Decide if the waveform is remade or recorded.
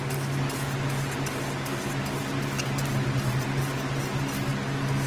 recorded